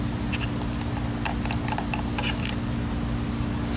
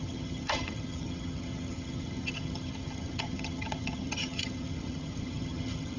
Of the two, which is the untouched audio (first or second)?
first